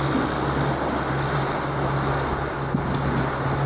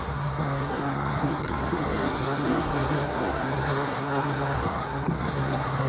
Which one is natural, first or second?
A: first